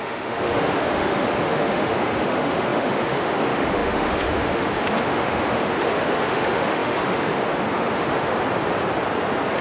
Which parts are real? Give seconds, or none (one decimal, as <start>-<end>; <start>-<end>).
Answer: 8.3-9.6